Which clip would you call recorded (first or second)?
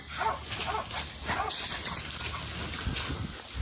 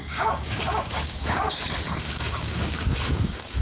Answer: first